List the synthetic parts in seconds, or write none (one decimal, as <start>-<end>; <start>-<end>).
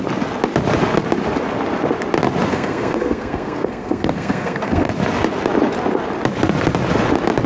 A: 2.5-4.9